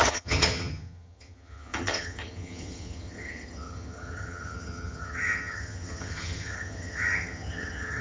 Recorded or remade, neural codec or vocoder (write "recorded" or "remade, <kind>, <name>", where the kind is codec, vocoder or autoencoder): remade, vocoder, HiFi-GAN